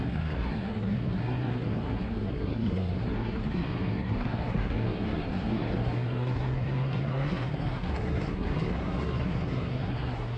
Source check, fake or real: fake